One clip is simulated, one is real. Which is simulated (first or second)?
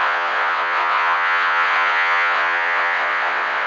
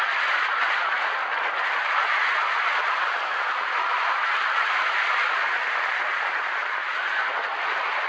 first